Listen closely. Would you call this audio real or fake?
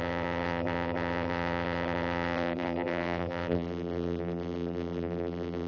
fake